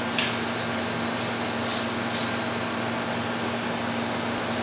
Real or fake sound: real